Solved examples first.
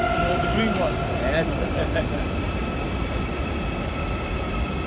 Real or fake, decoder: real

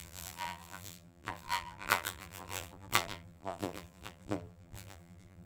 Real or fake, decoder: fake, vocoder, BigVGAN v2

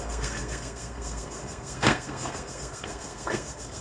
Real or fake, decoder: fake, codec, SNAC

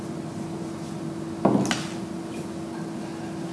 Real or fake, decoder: real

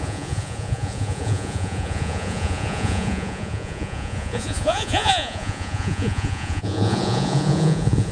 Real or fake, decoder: fake, vocoder, Vocos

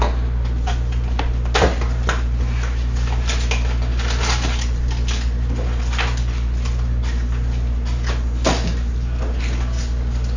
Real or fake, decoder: real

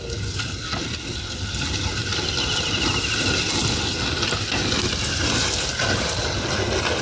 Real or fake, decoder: real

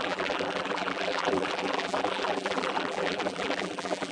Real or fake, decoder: fake, vocoder, BigVGAN v2